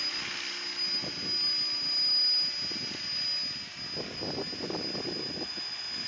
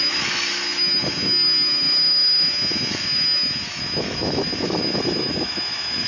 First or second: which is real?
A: first